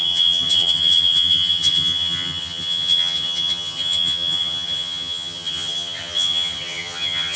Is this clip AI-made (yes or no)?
yes